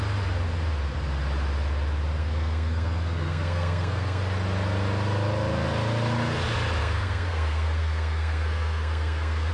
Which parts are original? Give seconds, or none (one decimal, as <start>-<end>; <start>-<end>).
0.0-2.2; 4.2-6.8